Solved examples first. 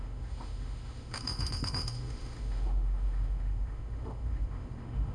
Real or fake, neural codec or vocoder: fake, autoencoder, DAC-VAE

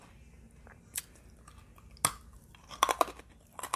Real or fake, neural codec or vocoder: real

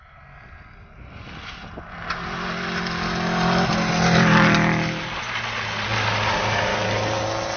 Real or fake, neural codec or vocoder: real